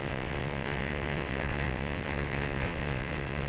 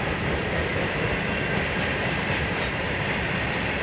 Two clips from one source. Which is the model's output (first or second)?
first